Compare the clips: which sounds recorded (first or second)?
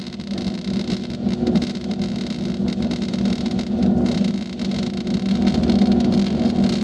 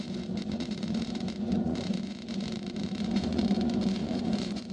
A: first